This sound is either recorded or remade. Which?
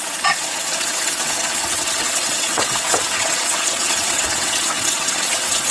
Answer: remade